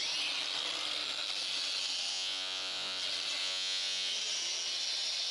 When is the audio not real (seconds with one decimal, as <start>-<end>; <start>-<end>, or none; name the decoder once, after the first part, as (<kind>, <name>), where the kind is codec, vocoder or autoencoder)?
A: 2.1-3.0 (vocoder, Vocos); 3.4-4.1